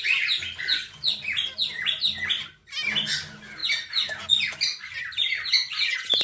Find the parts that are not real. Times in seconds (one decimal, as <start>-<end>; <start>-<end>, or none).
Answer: none